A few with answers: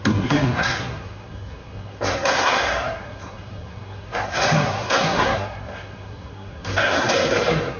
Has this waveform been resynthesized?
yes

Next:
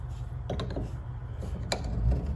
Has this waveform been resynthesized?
no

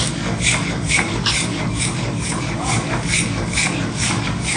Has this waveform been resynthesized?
yes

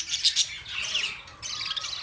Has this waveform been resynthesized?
no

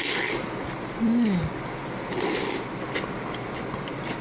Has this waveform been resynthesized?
no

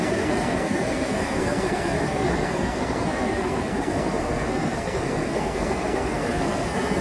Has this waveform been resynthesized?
yes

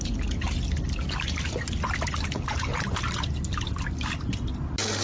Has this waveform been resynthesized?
no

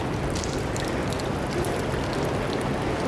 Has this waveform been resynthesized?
no